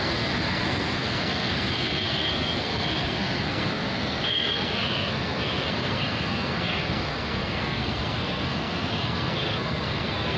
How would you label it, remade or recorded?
remade